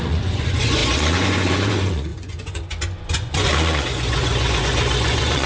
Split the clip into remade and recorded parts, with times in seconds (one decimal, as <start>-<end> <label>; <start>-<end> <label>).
0.0-5.5 remade